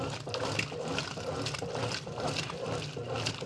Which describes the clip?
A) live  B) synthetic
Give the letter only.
A